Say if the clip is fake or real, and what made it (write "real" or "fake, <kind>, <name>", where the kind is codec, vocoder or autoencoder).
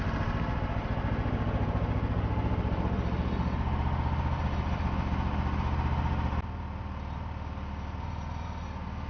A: real